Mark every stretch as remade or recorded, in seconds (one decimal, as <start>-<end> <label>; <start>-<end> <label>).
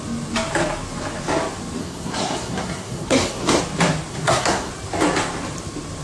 0.0-1.8 recorded; 1.8-3.6 remade; 3.6-4.1 recorded; 4.1-4.7 remade; 4.7-6.0 recorded